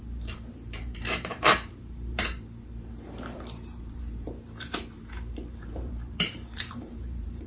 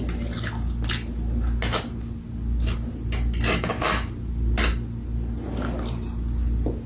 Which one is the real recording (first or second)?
second